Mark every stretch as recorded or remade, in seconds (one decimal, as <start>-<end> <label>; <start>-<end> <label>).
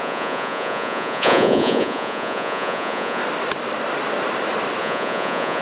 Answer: 0.0-3.2 remade; 3.2-4.8 recorded; 4.8-5.6 remade